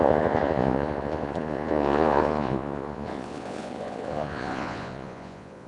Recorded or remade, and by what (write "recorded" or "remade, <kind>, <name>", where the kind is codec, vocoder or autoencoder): remade, vocoder, Vocos